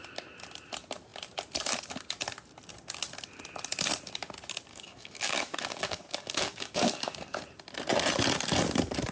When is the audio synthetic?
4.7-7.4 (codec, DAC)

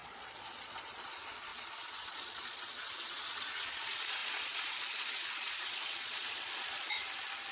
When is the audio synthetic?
0.0-7.5 (vocoder, Vocos)

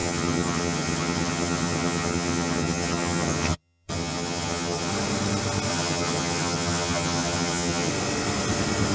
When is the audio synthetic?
0.0-4.9 (vocoder, HiFi-GAN); 5.7-7.9

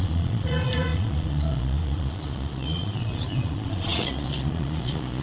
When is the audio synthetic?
0.0-5.2 (vocoder, Vocos)

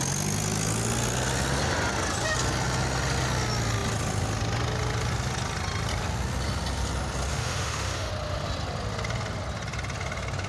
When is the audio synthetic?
7.3-8.1 (autoencoder, DAC-VAE)

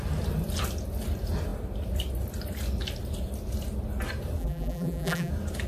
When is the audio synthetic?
4.4-5.3 (vocoder, BigVGAN v2)